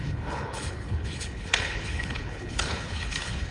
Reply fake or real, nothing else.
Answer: fake